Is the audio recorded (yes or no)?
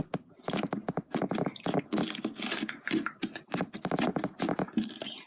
yes